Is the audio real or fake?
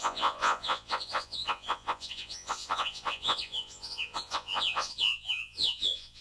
fake